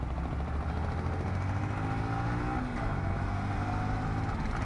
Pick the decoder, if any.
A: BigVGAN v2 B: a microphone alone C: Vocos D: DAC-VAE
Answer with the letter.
B